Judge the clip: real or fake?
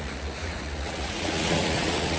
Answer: fake